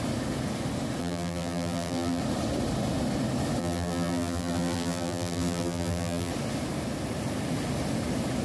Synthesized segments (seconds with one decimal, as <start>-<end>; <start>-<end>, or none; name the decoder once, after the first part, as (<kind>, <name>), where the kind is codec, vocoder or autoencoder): 1.0-2.2 (vocoder, BigVGAN v2); 3.6-6.3